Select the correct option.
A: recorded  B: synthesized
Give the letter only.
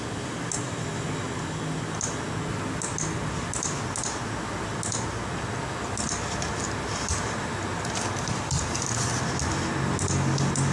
A